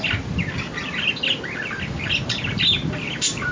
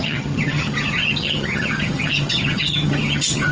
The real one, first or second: first